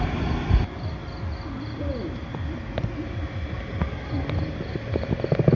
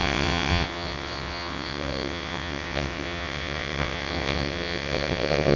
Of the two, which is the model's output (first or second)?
second